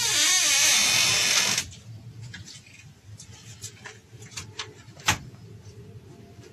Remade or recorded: recorded